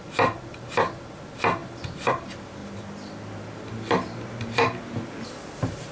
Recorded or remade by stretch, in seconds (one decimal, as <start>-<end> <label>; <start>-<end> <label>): 0.0-5.9 recorded